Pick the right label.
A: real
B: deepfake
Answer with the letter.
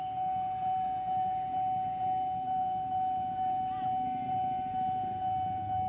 B